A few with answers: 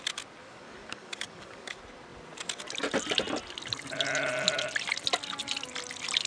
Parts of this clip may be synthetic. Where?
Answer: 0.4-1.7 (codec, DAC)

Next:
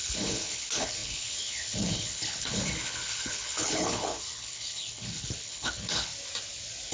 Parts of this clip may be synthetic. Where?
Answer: 0.0-6.1 (codec, HILCodec)

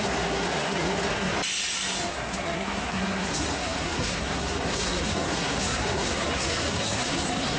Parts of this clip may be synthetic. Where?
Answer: 0.0-1.3 (codec, SNAC); 2.1-7.6

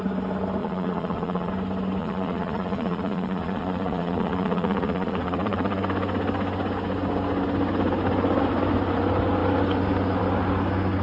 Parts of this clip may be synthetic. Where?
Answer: 0.6-1.5 (vocoder, Vocos); 2.0-5.8

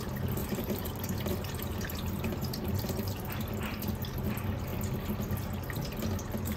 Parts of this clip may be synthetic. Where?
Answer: 0.4-3.3 (vocoder, BigVGAN v2)

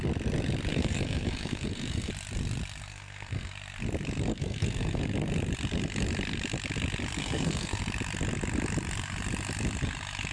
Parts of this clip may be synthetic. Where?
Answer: 0.7-2.1 (codec, SNAC); 2.9-3.5; 4.3-5.0; 7.2-7.8

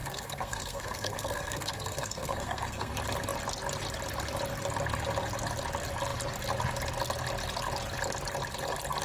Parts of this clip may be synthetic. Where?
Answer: 0.0-2.9 (codec, SNAC)